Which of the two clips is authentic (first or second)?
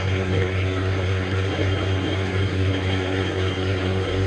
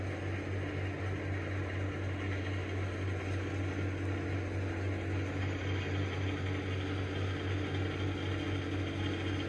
second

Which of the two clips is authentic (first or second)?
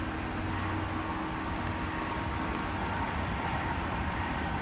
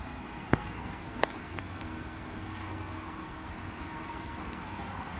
first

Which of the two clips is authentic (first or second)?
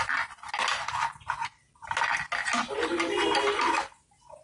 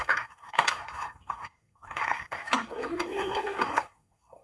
first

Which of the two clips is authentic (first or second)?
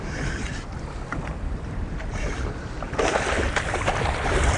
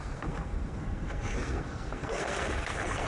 first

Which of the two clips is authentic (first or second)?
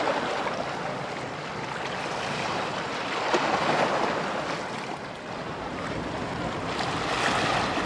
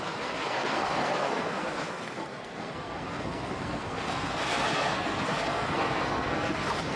first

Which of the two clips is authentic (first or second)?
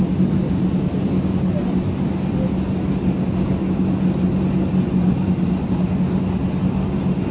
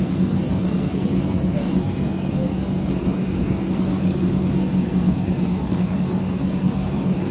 first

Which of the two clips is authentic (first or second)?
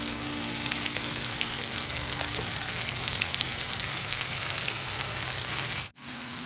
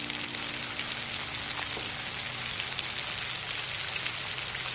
second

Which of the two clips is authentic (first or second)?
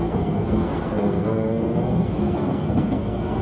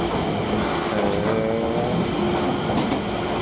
second